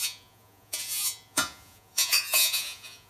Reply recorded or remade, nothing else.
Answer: remade